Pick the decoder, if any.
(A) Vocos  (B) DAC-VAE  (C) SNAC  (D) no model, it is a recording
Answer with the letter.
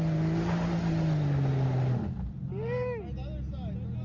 D